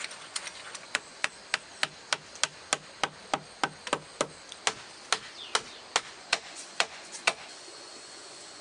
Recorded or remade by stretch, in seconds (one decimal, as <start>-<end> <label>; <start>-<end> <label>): 0.0-1.4 remade; 1.4-6.0 recorded; 6.0-8.6 remade